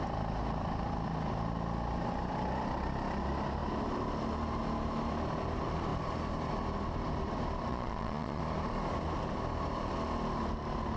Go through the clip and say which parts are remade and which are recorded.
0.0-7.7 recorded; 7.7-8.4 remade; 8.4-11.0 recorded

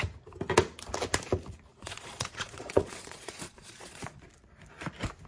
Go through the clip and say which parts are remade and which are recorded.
0.0-1.7 recorded; 1.7-4.2 remade; 4.2-5.3 recorded

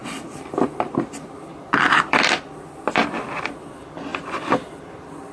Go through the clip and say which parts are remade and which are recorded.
0.0-3.0 remade; 3.0-3.6 recorded; 3.6-5.3 remade

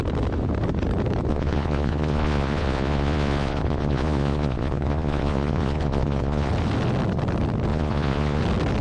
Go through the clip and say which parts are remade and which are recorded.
0.0-1.3 recorded; 1.3-6.5 remade; 6.5-7.7 recorded; 7.7-8.4 remade; 8.4-8.8 recorded